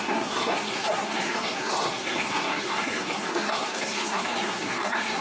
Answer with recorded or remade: remade